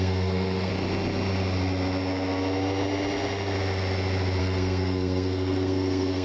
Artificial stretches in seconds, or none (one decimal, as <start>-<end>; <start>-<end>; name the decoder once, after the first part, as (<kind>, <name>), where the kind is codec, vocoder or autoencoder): 0.0-0.7 (codec, SNAC); 4.4-6.2